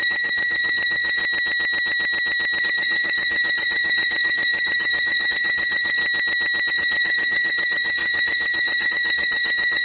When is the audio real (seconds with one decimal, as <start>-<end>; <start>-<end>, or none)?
1.2-2.6; 6.0-6.7